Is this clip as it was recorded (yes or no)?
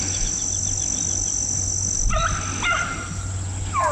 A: yes